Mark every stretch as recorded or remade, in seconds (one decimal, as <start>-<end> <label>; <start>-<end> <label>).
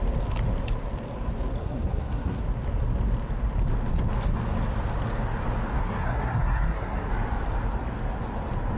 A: 0.0-1.6 recorded; 1.6-2.4 remade; 2.4-5.8 recorded; 5.8-7.1 remade; 7.1-8.8 recorded